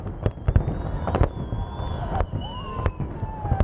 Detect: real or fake real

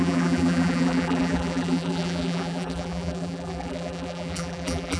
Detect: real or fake fake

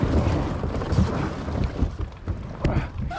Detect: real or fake real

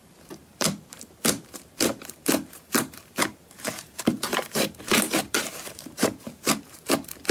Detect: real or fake fake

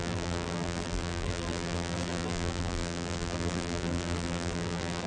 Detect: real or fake fake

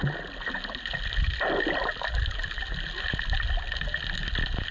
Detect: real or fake real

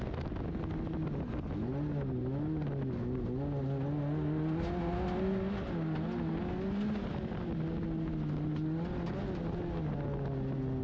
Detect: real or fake real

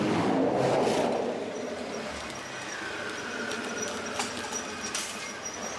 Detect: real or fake real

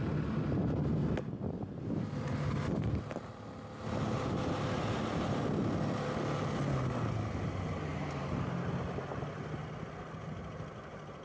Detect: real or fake real